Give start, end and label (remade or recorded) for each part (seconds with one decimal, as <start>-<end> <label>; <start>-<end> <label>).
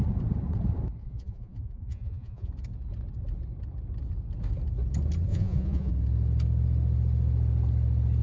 0.0-1.0 recorded; 1.0-2.5 remade; 2.5-5.3 recorded; 5.3-5.9 remade; 5.9-8.2 recorded